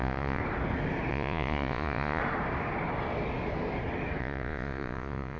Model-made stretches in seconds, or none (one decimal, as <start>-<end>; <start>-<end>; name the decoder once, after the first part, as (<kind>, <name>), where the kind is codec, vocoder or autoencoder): 0.0-0.4 (vocoder, Vocos); 1.1-2.2; 4.2-5.4